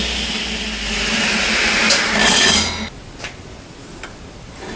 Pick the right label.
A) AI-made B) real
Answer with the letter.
B